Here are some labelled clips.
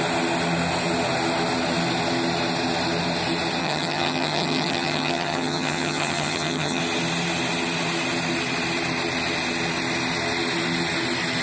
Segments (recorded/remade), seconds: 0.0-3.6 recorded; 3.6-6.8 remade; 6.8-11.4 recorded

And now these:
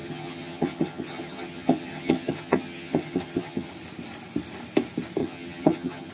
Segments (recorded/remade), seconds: 0.0-3.7 remade; 3.7-5.2 recorded; 5.2-6.1 remade

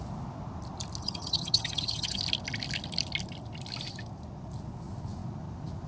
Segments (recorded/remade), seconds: 0.0-1.0 recorded; 1.0-2.2 remade; 2.2-5.9 recorded

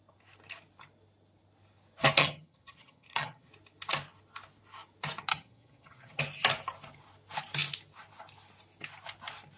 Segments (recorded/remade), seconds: 0.0-2.2 recorded; 2.2-3.5 remade; 3.5-5.3 recorded; 5.3-6.2 remade; 6.2-9.6 recorded

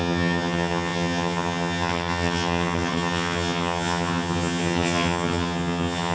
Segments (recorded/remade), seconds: 0.0-6.1 remade

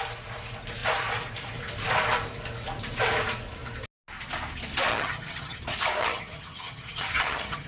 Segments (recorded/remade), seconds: 0.0-4.9 recorded; 4.9-5.6 remade; 5.6-6.0 recorded; 6.0-7.7 remade

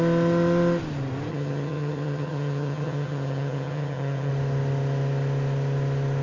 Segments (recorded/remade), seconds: 0.0-1.3 recorded; 1.3-4.3 remade; 4.3-6.2 recorded